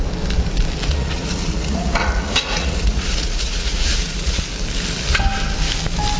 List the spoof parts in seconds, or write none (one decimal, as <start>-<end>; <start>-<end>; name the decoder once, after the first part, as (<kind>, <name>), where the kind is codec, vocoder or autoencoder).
0.9-4.4 (vocoder, Vocos)